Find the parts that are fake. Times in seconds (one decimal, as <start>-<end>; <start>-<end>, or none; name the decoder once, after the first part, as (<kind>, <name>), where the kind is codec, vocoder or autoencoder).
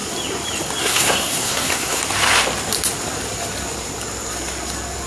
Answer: 0.8-2.0 (codec, SNAC)